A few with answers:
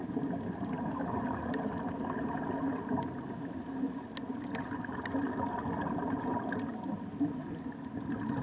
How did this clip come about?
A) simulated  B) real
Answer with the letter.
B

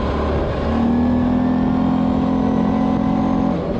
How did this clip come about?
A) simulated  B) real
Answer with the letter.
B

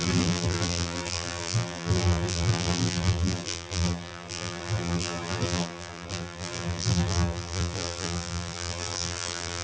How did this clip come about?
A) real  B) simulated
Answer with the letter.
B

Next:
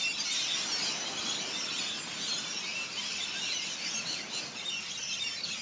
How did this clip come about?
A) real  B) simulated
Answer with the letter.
A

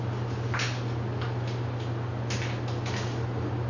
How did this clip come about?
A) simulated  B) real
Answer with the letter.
B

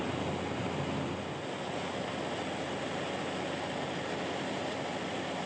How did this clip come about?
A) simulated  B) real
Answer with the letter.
B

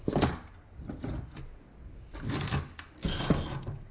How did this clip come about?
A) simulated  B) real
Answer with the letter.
B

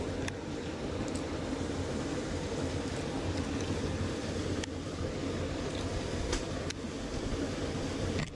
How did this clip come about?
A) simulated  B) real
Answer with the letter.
B